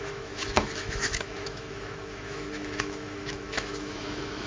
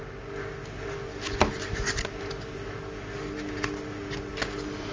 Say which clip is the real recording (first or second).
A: second